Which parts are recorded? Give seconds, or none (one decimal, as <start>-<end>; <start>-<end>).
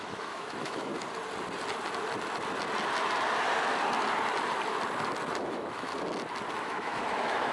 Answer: 0.9-5.4; 5.9-6.5